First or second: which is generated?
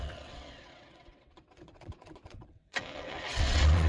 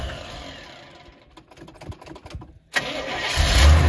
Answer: first